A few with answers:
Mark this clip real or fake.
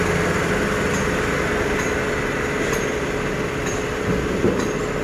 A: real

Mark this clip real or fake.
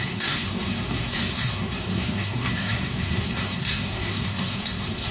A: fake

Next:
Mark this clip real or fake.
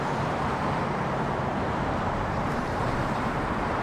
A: fake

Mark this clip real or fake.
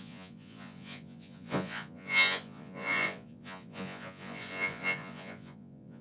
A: fake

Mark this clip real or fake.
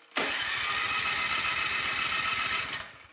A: real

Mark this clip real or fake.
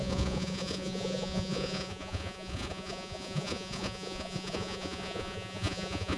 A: fake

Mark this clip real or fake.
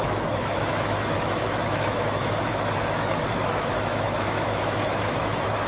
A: fake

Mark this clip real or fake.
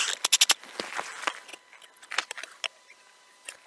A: real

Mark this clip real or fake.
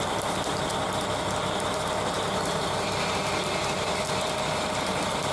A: real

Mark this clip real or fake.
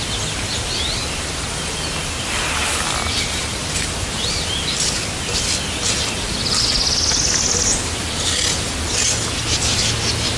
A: real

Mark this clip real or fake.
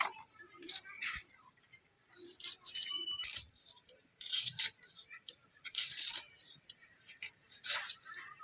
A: fake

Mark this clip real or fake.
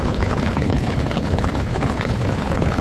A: fake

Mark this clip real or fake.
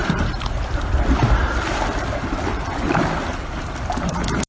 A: fake